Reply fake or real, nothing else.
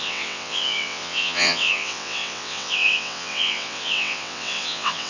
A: fake